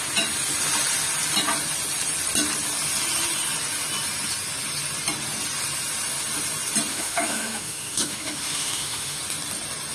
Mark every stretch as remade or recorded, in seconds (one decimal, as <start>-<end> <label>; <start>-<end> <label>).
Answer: 0.0-6.9 recorded; 6.9-9.2 remade; 9.2-9.9 recorded